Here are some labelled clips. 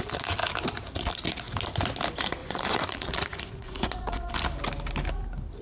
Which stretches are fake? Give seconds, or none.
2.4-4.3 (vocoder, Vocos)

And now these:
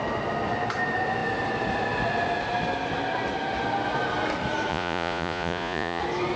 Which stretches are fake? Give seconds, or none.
4.7-6.0 (vocoder, Vocos)

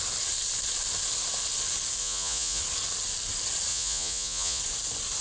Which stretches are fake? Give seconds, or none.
2.0-2.6 (vocoder, Vocos); 3.7-4.6

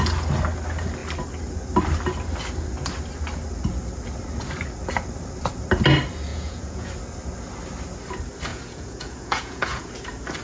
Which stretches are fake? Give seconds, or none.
6.3-6.9 (vocoder, Vocos); 8.5-9.9